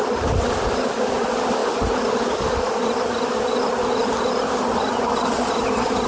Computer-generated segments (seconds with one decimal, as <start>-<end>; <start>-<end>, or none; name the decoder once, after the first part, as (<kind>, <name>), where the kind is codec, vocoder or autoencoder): none